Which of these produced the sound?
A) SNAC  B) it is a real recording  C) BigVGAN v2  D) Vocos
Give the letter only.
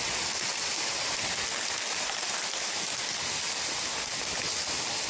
B